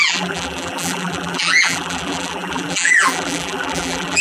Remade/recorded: remade